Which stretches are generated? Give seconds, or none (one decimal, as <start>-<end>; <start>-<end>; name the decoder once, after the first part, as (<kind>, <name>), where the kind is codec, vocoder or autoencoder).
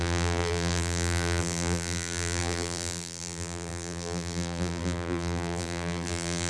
0.0-6.5 (vocoder, BigVGAN v2)